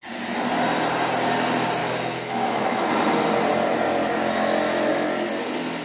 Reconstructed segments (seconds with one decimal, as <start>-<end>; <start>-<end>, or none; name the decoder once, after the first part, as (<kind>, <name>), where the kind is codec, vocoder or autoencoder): 1.8-2.9 (autoencoder, DAC-VAE)